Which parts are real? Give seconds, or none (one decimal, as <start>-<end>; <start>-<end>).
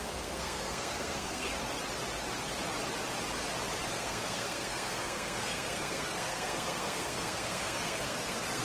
1.5-3.9